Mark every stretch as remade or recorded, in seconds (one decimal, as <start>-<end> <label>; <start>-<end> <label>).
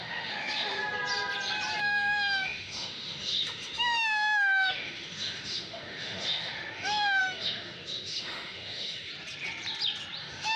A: 0.0-0.8 remade; 0.8-1.8 recorded; 1.8-9.1 remade; 9.1-10.2 recorded; 10.2-10.6 remade